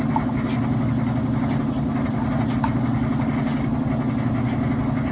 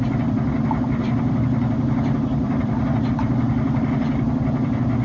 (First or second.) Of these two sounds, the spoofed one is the second